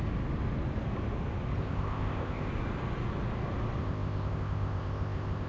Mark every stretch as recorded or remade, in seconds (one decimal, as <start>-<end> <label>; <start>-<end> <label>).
0.0-1.6 recorded; 1.6-2.5 remade; 2.5-3.8 recorded; 3.8-5.5 remade